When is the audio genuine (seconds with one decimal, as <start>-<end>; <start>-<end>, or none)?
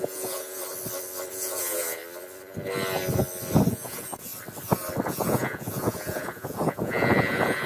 0.6-1.3; 2.0-3.7; 4.3-5.1